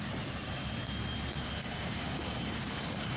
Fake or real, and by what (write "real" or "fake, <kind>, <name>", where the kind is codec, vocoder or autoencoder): real